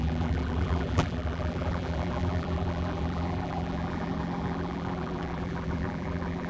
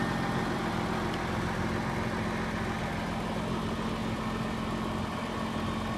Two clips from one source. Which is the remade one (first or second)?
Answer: first